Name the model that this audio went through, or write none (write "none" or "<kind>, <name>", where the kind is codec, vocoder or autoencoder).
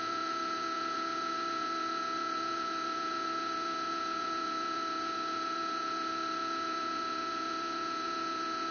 vocoder, Vocos